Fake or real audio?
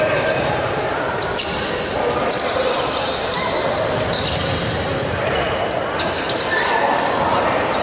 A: fake